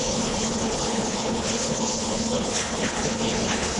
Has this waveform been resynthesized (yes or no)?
yes